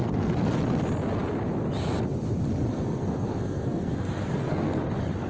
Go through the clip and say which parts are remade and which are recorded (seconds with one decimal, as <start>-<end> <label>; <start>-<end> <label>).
0.0-0.5 remade; 0.5-2.7 recorded; 2.7-4.8 remade; 4.8-5.3 recorded